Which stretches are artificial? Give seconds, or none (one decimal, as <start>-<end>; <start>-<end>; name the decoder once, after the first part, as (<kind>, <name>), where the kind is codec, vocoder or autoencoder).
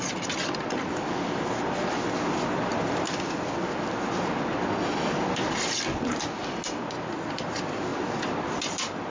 none